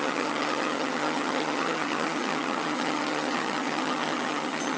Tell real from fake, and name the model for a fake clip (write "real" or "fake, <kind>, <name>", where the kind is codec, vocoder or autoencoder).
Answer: fake, vocoder, HiFi-GAN